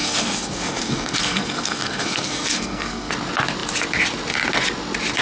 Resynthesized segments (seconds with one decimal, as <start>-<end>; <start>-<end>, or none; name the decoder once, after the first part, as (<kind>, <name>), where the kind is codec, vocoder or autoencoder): 0.0-3.1 (codec, SNAC)